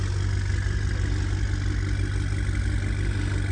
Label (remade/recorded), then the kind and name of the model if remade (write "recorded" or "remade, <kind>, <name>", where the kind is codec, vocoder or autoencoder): recorded